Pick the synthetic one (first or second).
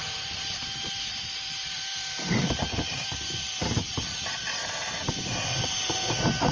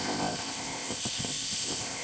second